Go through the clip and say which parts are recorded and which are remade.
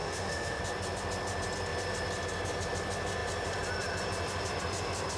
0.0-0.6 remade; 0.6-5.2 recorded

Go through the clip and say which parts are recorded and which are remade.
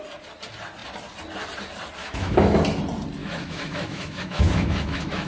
0.0-2.0 recorded; 2.0-2.6 remade; 2.6-3.2 recorded; 3.2-5.3 remade